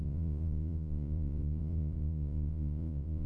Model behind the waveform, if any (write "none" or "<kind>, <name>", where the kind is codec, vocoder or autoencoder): vocoder, Vocos